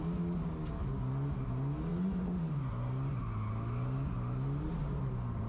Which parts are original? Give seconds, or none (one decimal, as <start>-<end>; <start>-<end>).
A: 0.0-5.5